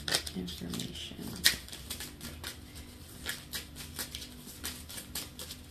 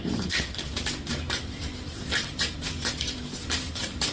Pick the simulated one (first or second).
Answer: second